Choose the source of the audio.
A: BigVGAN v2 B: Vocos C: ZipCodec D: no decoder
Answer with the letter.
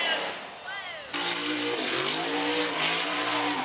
D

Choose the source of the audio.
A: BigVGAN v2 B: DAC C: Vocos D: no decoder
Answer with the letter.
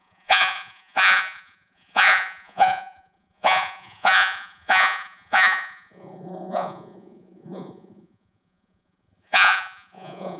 C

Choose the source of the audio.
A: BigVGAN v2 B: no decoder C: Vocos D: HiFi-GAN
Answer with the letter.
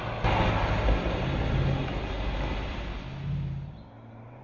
B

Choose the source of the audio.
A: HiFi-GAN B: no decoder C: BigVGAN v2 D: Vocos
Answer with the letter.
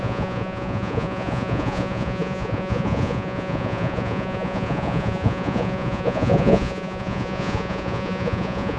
D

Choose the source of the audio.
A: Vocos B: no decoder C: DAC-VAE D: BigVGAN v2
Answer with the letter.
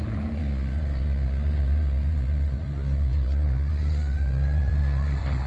A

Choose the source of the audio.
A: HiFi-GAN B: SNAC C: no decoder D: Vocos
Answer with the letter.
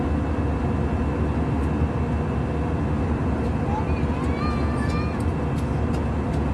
C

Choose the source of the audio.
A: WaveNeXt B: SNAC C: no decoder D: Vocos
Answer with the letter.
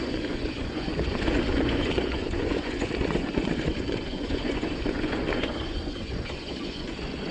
D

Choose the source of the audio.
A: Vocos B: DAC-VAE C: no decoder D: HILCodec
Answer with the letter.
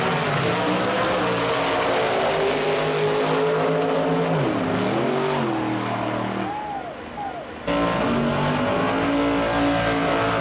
C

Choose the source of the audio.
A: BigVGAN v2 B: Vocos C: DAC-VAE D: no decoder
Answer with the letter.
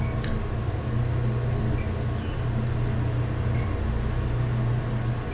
D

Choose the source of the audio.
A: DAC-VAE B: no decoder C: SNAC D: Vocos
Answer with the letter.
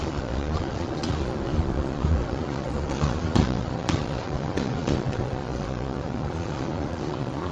D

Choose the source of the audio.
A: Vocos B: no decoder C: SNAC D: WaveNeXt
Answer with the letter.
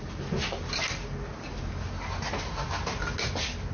B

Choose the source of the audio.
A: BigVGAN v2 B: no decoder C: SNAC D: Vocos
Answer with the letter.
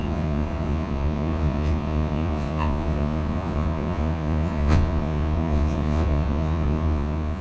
D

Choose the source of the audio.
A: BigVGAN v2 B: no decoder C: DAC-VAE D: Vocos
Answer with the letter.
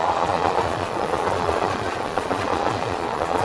D